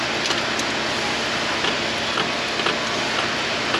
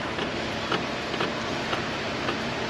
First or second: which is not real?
second